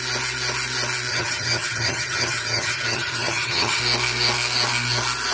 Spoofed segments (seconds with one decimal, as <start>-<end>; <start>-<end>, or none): 1.1-3.8